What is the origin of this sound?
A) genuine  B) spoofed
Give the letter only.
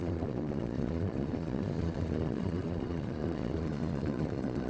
B